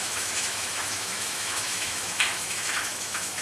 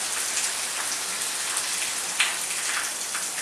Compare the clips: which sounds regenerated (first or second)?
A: first